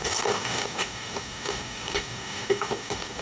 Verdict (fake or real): fake